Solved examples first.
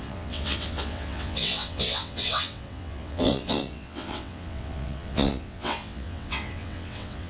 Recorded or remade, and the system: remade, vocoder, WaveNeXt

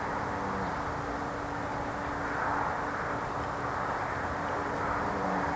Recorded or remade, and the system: recorded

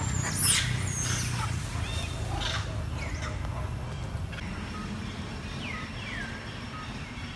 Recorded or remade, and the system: recorded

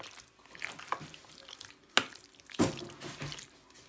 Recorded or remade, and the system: recorded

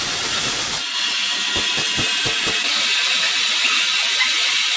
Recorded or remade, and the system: recorded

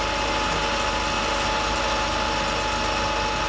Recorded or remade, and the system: recorded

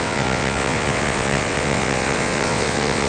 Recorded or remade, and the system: remade, vocoder, WaveNeXt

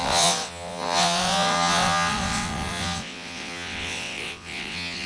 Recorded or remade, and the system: remade, vocoder, WaveNeXt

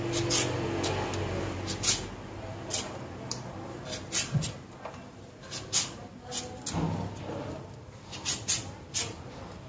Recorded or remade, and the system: recorded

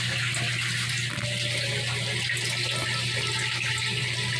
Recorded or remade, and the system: recorded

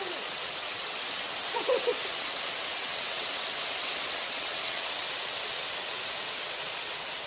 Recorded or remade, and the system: remade, vocoder, WaveNeXt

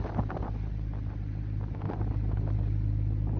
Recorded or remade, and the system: recorded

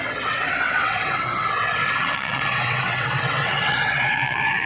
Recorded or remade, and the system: remade, vocoder, WaveNeXt